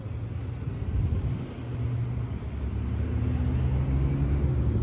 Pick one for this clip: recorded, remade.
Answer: recorded